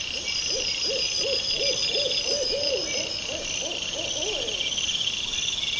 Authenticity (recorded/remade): recorded